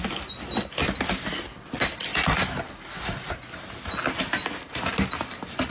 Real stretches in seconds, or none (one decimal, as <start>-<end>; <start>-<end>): 0.0-5.7